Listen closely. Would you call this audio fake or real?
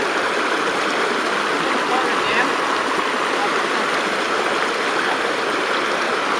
real